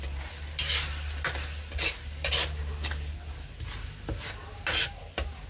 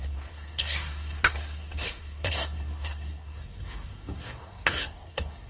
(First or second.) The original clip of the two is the first